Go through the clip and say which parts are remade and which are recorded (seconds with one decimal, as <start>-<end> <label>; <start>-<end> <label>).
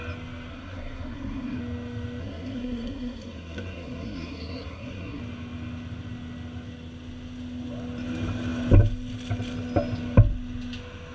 0.0-0.5 recorded; 0.5-1.6 remade; 1.6-2.2 recorded; 2.2-5.2 remade; 5.2-11.1 recorded